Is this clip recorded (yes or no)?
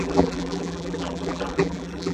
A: no